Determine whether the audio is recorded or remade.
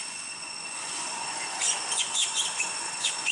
remade